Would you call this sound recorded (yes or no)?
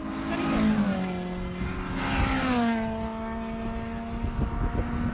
yes